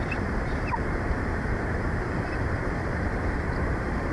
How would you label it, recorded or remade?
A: remade